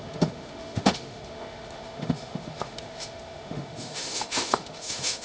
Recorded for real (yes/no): no